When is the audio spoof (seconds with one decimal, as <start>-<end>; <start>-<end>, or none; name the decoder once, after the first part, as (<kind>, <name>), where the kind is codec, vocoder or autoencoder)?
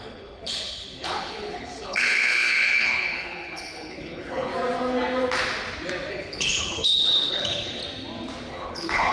0.0-4.5 (codec, HILCodec); 6.1-7.8; 8.5-9.1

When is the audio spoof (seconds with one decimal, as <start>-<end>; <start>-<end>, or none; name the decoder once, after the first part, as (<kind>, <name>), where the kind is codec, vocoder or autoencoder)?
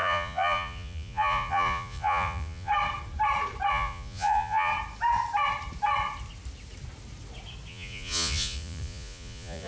0.0-2.7 (vocoder, Vocos); 3.7-4.7; 7.7-9.7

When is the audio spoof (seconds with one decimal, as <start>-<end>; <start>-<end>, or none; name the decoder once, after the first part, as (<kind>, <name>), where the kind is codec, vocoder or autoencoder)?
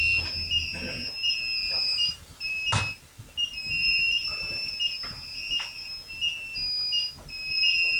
1.6-2.6 (vocoder, BigVGAN v2); 3.8-4.7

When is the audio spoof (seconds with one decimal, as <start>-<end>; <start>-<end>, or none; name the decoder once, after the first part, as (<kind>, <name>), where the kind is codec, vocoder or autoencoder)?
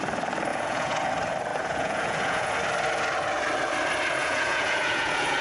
0.5-1.1 (vocoder, Vocos); 1.5-2.5; 4.2-5.4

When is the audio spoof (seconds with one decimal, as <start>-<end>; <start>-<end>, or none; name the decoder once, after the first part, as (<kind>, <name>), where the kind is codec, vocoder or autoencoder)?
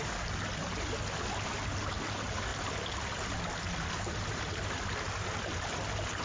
none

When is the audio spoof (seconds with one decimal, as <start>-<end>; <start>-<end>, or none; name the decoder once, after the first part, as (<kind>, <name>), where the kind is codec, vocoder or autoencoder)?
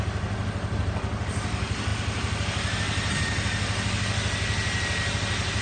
none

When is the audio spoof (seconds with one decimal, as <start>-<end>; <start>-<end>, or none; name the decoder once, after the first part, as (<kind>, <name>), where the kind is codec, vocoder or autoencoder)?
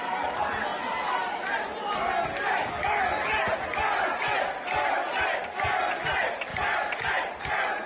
none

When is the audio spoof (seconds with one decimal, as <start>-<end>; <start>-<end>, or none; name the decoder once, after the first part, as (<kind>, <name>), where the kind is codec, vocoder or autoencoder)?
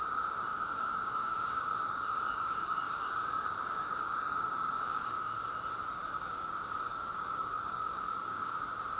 0.5-5.5 (codec, DAC); 6.0-6.5; 6.9-8.5